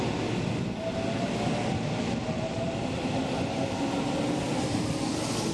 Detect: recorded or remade recorded